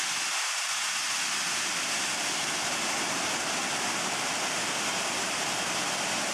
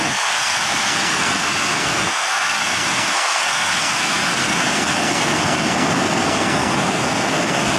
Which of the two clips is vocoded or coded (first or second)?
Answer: second